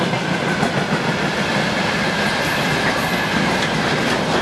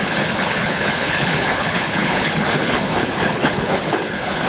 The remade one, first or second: second